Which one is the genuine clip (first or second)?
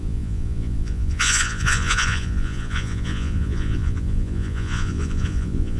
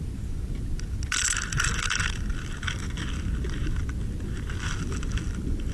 second